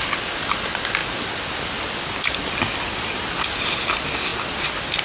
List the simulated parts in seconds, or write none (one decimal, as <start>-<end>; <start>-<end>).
none